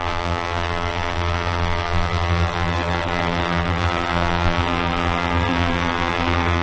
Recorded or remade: remade